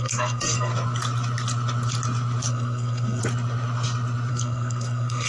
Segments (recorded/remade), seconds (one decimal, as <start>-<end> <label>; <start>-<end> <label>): 0.0-0.7 remade; 0.7-2.5 recorded; 2.5-3.2 remade; 3.2-4.3 recorded; 4.3-5.3 remade